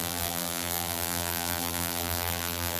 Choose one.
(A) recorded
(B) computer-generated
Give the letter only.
B